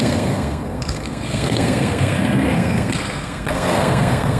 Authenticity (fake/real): fake